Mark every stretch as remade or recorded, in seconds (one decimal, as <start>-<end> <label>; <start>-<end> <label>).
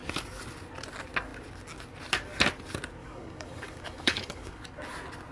0.0-3.0 recorded; 3.0-4.6 remade; 4.6-5.3 recorded